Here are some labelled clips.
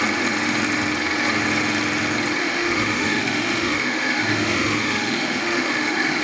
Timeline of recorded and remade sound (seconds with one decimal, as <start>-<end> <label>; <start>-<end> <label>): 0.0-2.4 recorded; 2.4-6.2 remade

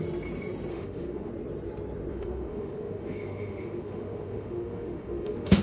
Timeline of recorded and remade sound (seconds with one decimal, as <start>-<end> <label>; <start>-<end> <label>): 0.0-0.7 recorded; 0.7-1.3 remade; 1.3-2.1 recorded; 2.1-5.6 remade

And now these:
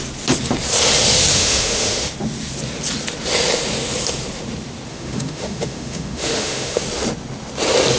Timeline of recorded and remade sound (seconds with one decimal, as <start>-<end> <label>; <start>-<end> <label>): 0.0-1.3 recorded; 1.3-2.0 remade; 2.0-4.9 recorded; 4.9-6.8 remade; 6.8-8.0 recorded

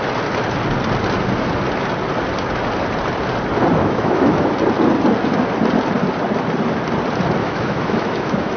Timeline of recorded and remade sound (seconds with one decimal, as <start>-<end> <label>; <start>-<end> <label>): 0.0-3.8 recorded; 3.8-4.5 remade; 4.5-7.4 recorded; 7.4-8.6 remade

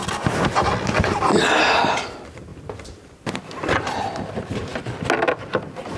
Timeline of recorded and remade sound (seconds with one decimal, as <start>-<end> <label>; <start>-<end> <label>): 0.0-6.0 recorded